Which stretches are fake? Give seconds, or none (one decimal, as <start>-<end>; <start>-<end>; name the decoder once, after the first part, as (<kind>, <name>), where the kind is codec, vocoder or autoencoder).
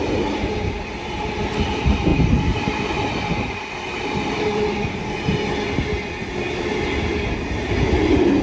none